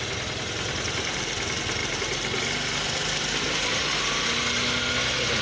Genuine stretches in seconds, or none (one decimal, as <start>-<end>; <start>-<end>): 0.0-5.4